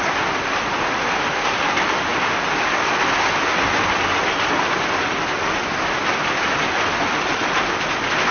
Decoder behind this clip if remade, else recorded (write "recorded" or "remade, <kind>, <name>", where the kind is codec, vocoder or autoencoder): recorded